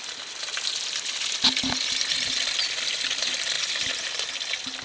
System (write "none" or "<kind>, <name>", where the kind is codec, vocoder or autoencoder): none